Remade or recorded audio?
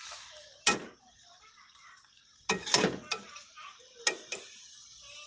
recorded